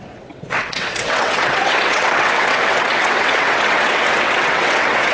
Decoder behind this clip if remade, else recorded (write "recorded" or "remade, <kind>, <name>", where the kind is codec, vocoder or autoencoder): remade, vocoder, WaveNeXt